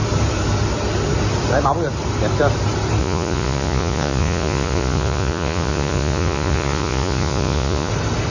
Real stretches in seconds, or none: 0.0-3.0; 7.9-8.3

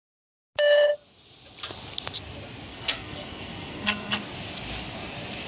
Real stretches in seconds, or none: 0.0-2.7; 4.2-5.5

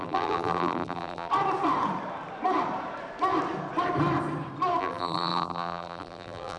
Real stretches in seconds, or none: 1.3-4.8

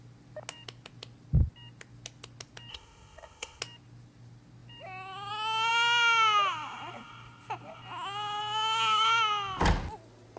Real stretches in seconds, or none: 0.0-2.7; 3.6-10.4

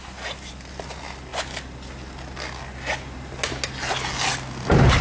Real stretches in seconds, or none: 0.0-5.0